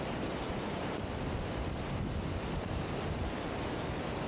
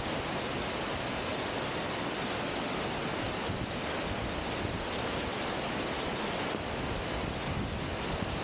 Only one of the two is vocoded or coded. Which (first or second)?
first